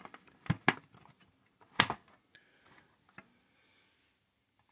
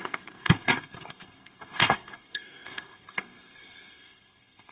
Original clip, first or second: first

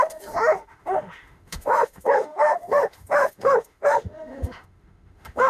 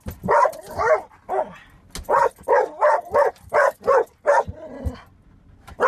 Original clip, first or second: second